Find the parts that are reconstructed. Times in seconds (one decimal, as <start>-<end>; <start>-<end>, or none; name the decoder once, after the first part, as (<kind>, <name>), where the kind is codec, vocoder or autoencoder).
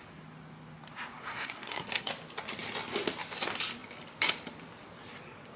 1.2-2.1 (codec, SNAC)